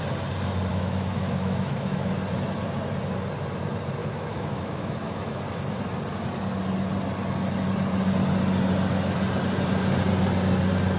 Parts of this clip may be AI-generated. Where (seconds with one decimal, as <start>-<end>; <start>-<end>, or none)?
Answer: 0.7-2.1; 4.0-5.4